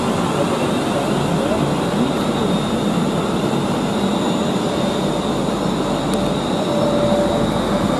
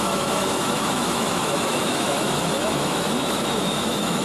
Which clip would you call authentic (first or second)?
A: first